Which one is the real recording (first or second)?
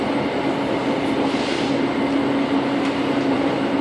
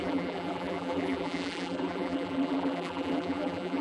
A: first